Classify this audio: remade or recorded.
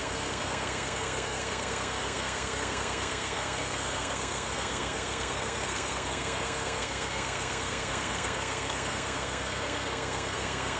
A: remade